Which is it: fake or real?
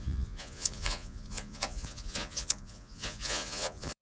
fake